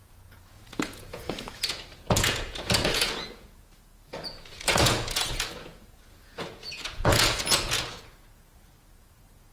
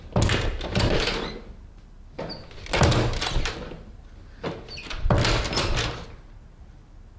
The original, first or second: second